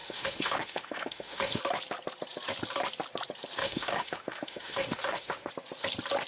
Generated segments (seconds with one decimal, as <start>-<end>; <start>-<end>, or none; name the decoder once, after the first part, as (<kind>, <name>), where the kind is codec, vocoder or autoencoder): 0.0-1.6 (autoencoder, DAC-VAE); 3.6-5.5